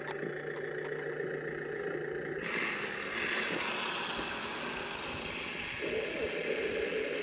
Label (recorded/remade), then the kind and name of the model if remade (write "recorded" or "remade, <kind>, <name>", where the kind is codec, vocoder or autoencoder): recorded